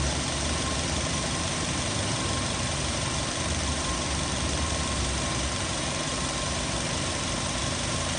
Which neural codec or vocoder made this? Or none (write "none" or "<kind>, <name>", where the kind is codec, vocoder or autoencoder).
vocoder, BigVGAN v2